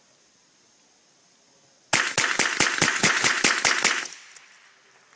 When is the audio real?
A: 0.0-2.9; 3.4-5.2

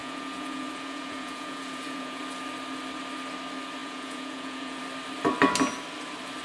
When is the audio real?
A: 2.2-3.8; 4.8-6.4

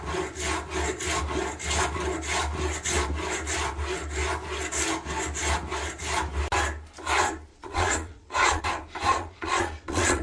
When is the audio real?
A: 0.0-7.5; 8.6-9.1

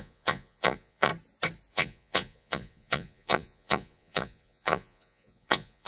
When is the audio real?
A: 1.1-1.7

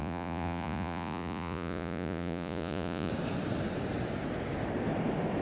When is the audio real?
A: 3.1-5.4

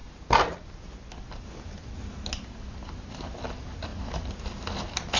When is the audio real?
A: 0.0-5.2

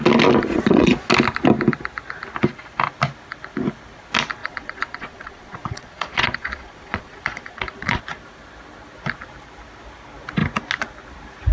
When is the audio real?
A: 0.0-0.5; 1.1-4.4; 8.0-11.5